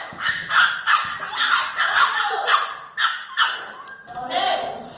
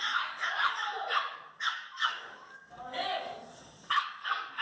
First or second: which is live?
first